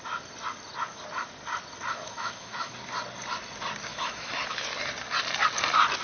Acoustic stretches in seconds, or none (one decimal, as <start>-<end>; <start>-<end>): 0.0-1.9; 2.7-3.9; 4.7-6.0